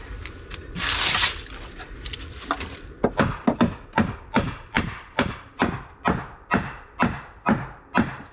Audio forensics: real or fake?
real